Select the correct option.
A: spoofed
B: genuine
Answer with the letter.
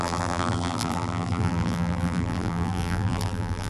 A